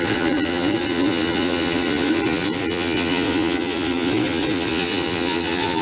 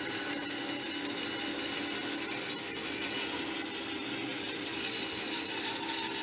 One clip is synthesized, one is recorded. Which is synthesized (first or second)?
first